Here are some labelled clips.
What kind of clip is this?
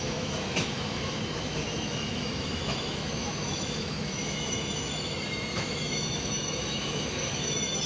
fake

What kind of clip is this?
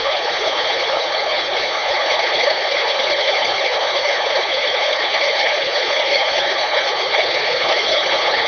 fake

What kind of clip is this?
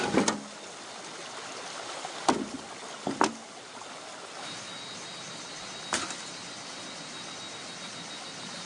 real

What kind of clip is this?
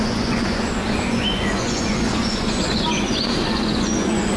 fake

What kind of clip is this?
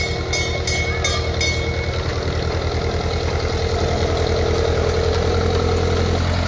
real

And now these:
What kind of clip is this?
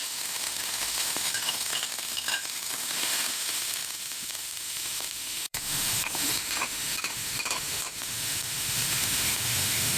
fake